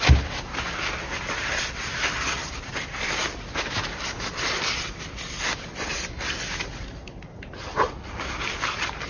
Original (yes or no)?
yes